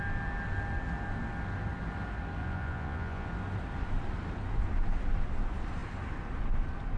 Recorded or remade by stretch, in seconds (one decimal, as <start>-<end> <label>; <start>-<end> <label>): 0.0-2.4 recorded; 2.4-3.3 remade; 3.3-7.0 recorded